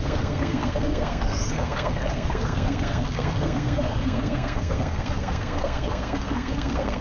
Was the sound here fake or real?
fake